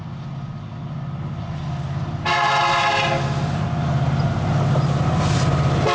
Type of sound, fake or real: real